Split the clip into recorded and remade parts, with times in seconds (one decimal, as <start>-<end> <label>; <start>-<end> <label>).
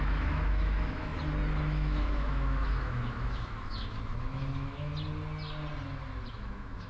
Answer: 0.0-1.1 remade; 1.1-1.6 recorded; 1.6-4.9 remade; 4.9-6.3 recorded; 6.3-6.9 remade